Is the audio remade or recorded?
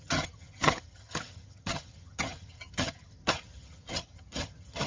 remade